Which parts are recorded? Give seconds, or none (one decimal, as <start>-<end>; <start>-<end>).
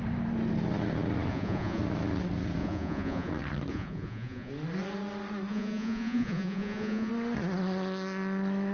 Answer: 0.0-1.3; 1.8-2.6; 3.3-3.7; 4.5-5.5; 7.1-8.7